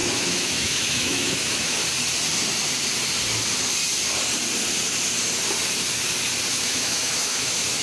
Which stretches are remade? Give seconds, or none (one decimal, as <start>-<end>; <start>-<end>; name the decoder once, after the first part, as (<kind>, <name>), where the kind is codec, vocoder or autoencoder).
0.0-1.8 (autoencoder, DAC-VAE); 6.5-7.8